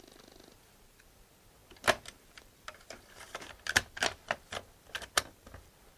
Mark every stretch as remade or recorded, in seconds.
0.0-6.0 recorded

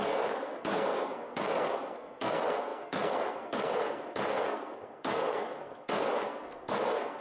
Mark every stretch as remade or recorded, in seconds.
0.0-7.2 remade

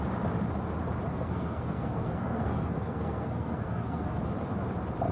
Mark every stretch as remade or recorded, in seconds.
0.0-1.1 recorded; 1.1-4.2 remade; 4.2-5.1 recorded